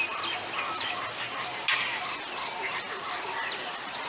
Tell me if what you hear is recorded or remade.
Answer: recorded